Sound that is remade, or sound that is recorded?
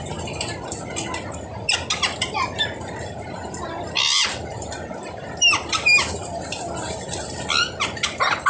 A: recorded